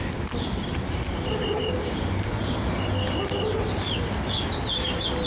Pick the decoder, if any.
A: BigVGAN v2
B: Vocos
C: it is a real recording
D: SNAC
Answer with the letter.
C